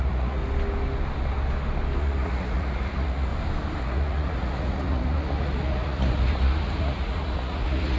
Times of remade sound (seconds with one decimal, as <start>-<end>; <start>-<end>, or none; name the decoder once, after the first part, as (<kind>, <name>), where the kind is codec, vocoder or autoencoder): 0.0-0.4 (vocoder, Vocos); 2.0-3.3; 3.8-8.0